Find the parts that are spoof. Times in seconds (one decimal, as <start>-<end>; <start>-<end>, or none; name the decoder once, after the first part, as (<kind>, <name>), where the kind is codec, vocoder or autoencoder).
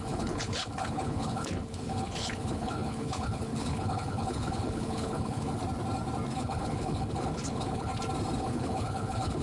0.0-5.6 (codec, HILCodec); 6.4-7.9; 8.4-9.4